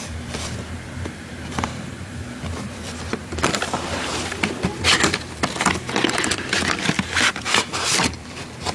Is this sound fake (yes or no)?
yes